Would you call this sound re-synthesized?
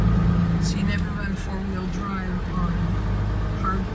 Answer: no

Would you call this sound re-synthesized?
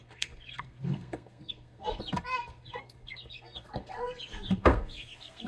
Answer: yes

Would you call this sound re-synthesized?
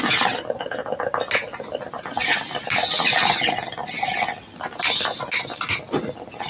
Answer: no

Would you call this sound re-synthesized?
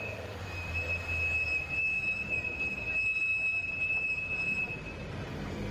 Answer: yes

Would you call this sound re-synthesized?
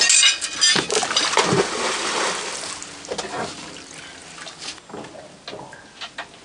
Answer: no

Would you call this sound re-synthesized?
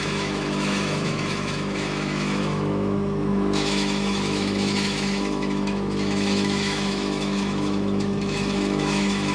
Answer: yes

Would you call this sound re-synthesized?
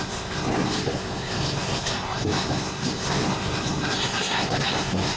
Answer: yes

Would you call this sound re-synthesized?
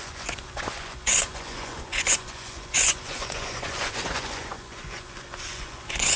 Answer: yes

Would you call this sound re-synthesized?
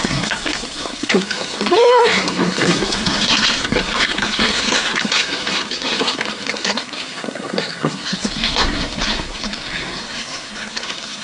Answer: yes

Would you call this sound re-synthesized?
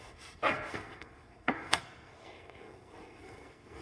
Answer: yes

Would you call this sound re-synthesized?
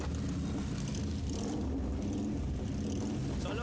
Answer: no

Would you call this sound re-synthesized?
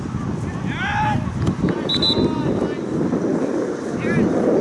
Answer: no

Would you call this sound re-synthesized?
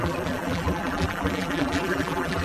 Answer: yes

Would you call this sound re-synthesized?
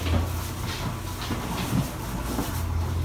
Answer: no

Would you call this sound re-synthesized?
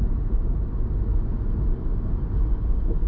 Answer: no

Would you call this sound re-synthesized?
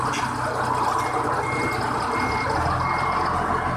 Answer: no